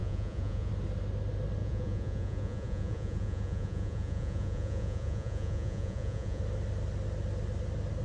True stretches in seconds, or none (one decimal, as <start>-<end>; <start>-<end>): 0.7-1.6; 6.4-8.0